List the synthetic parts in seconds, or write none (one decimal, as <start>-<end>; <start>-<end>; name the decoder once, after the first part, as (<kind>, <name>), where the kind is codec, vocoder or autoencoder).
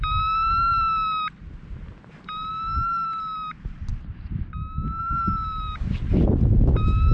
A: none